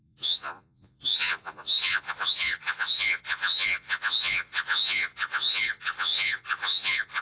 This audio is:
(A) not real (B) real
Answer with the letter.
A